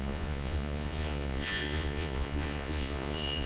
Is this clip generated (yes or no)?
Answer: yes